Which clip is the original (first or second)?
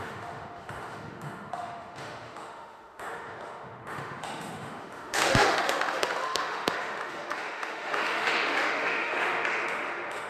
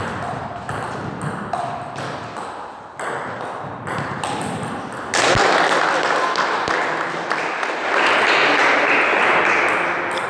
second